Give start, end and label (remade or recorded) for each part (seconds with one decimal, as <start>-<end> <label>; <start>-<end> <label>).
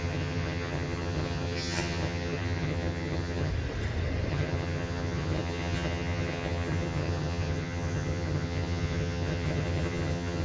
0.0-3.5 remade; 3.5-4.3 recorded; 4.3-10.4 remade